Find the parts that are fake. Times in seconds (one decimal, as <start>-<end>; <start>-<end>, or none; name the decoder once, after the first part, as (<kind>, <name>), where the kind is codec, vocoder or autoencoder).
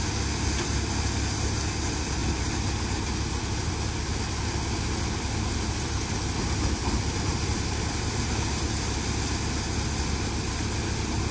none